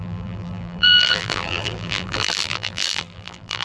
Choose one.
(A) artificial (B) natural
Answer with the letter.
A